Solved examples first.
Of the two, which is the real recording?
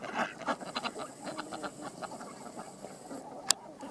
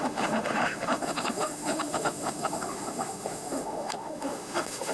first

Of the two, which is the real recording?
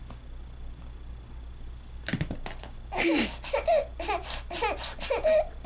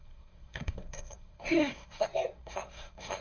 first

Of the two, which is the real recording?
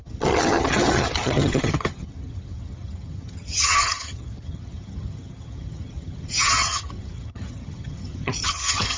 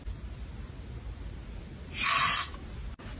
second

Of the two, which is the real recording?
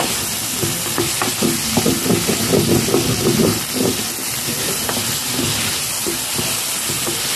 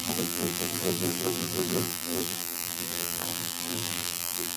first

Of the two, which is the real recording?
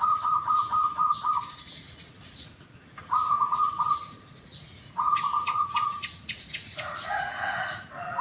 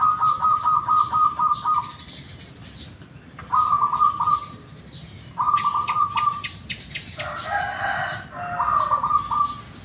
second